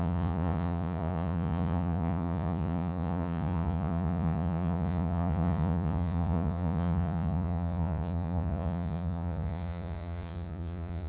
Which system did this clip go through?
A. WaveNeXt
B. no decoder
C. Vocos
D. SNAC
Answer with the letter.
C